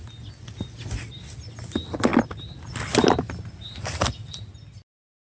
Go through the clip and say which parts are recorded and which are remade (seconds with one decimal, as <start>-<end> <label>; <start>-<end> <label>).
0.0-5.2 recorded